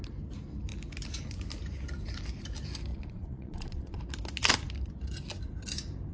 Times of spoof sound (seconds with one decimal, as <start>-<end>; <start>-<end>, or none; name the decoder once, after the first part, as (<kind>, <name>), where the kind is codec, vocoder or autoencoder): 2.9-4.0 (vocoder, Vocos)

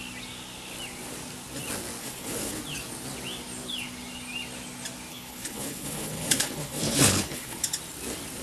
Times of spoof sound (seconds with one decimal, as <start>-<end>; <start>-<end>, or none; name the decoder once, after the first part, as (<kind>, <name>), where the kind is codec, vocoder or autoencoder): 2.0-2.6 (codec, HILCodec); 5.1-7.6

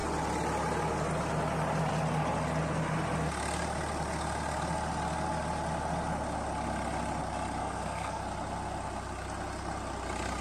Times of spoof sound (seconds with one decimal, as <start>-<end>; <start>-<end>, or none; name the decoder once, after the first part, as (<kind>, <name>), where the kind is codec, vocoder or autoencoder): 7.6-8.2 (codec, SNAC)

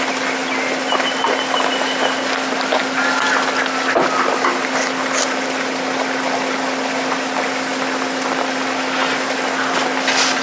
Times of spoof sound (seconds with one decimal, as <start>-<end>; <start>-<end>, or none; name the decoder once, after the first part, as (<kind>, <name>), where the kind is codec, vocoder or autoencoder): none

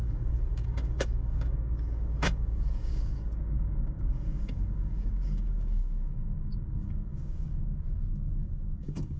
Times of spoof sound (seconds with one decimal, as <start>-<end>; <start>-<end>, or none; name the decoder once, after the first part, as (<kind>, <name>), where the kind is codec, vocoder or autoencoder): 0.0-9.2 (codec, DAC)